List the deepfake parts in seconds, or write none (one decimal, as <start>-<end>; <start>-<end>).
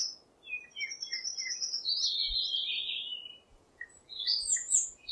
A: 3.5-5.1